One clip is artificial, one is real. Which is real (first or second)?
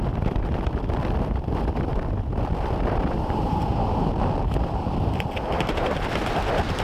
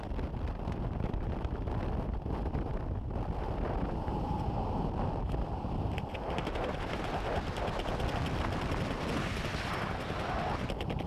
second